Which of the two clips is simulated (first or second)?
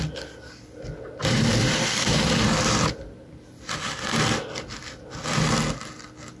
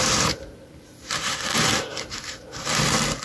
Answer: second